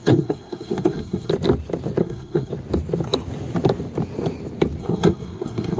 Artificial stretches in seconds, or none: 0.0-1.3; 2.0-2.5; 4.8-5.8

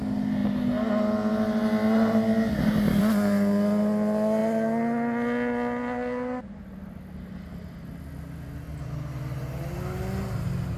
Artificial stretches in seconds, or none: none

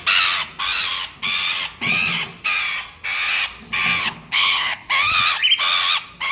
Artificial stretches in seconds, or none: 4.0-4.9

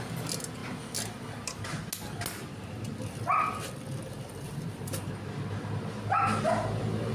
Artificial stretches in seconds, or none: none

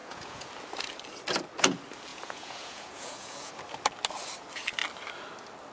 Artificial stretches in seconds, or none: 0.0-0.5; 2.1-3.5